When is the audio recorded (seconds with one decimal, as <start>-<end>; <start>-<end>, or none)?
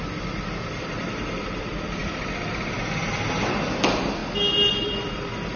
4.2-4.7